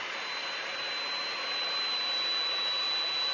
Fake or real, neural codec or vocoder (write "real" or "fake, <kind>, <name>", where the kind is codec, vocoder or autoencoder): real